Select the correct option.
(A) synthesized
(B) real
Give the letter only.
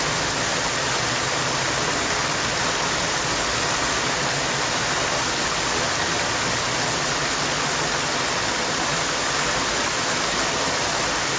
B